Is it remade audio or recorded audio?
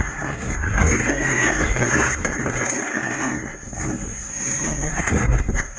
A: remade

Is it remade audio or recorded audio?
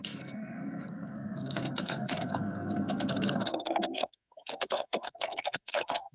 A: remade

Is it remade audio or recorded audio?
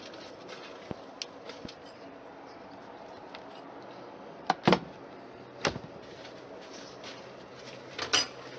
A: recorded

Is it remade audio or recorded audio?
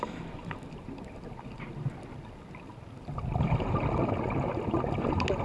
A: recorded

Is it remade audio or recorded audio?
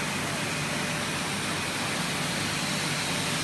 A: recorded